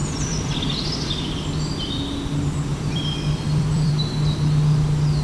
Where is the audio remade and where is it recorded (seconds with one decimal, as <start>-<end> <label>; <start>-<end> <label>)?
0.0-1.1 remade; 1.1-2.7 recorded; 2.7-3.9 remade; 3.9-5.2 recorded